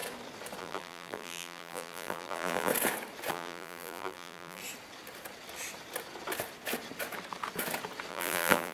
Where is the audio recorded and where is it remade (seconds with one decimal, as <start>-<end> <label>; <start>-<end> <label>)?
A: 0.0-0.6 recorded; 0.6-2.7 remade; 2.7-3.3 recorded; 3.3-4.6 remade; 4.6-8.1 recorded; 8.1-8.7 remade